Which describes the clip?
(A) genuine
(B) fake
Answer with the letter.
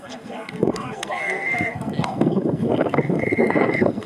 B